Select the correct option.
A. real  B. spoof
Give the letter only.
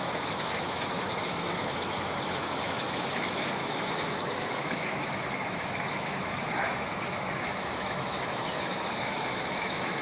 B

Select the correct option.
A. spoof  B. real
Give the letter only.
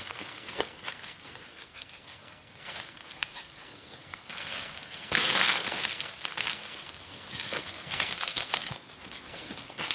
A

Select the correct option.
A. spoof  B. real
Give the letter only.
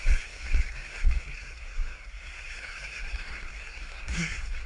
A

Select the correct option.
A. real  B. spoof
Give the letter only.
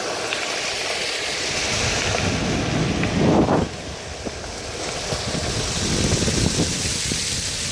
A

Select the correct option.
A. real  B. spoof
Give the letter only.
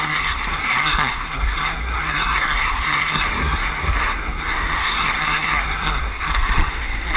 B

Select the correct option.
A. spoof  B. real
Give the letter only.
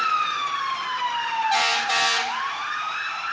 B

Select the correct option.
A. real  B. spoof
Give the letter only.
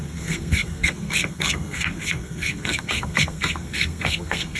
B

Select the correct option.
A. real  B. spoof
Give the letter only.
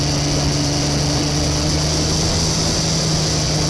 A